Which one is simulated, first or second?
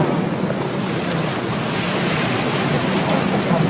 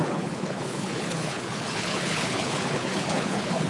second